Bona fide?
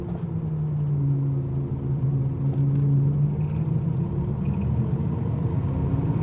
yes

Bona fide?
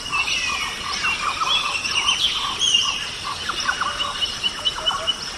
yes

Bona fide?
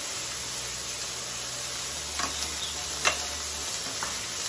yes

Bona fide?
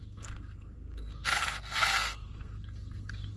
no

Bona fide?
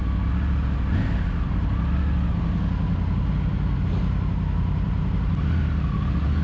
yes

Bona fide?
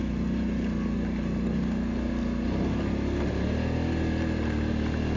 yes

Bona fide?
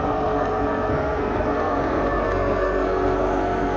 no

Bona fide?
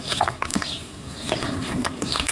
no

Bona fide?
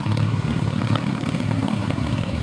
no